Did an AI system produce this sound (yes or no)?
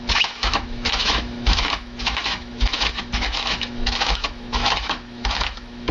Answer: yes